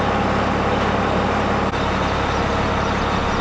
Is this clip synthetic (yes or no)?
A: no